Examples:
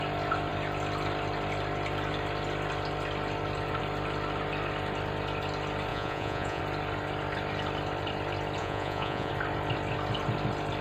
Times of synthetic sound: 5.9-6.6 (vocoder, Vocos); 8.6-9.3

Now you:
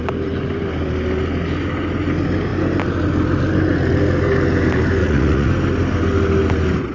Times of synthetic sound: 5.0-5.5 (vocoder, Vocos)

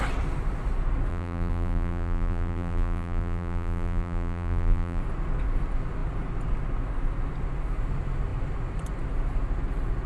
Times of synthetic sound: 1.1-5.0 (vocoder, BigVGAN v2)